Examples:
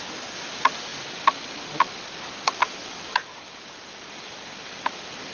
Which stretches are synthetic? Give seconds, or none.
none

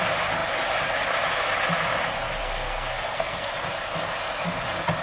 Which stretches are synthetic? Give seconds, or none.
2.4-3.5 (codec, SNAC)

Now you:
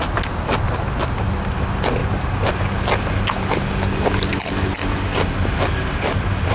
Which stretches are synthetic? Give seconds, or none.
2.0-2.5 (vocoder, BigVGAN v2)

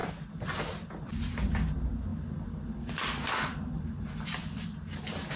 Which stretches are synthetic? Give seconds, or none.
0.0-1.5 (vocoder, BigVGAN v2); 2.1-5.4

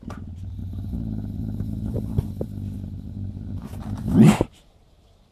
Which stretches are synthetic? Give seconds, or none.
none

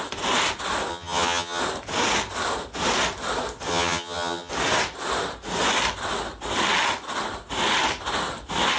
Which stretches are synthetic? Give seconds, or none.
0.9-1.6 (vocoder, HiFi-GAN); 3.7-4.5